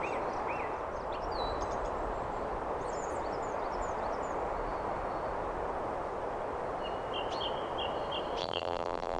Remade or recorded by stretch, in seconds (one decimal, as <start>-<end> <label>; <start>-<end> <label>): 0.0-8.4 recorded; 8.4-9.2 remade

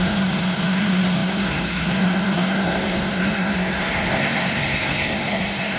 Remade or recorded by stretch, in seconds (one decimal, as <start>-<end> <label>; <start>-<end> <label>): 0.0-5.8 remade

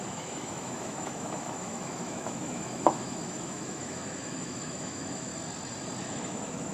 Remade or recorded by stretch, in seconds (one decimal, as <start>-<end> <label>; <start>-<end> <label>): 0.0-5.3 remade; 5.3-6.1 recorded; 6.1-6.7 remade

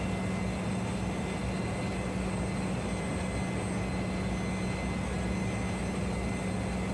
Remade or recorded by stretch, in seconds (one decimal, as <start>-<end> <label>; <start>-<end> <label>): 0.0-6.9 recorded